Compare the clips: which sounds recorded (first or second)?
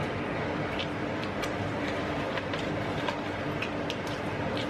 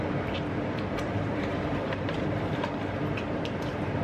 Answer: first